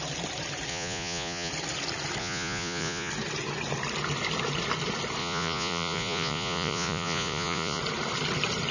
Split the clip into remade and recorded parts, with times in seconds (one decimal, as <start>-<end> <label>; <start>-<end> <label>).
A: 0.0-0.7 recorded; 0.7-1.5 remade; 1.5-2.2 recorded; 2.2-3.1 remade; 3.1-5.2 recorded; 5.2-7.8 remade; 7.8-8.7 recorded